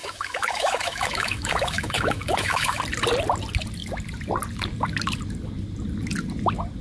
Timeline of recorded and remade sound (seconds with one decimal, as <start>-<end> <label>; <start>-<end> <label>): 0.0-2.8 remade; 2.8-6.8 recorded